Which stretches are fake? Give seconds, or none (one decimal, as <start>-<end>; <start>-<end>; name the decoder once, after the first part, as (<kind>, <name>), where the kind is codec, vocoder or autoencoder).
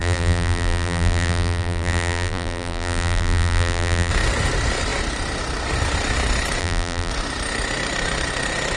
0.0-4.1 (vocoder, BigVGAN v2); 6.6-7.1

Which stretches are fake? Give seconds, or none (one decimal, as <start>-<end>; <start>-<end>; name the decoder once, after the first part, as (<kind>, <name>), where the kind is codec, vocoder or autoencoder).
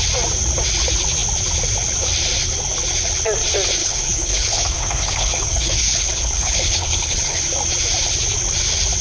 3.8-7.4 (codec, HILCodec)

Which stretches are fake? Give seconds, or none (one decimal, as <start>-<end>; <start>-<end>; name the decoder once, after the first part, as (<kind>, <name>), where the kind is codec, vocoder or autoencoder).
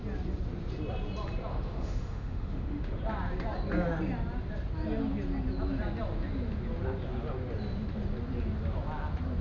1.5-3.0 (autoencoder, DAC-VAE)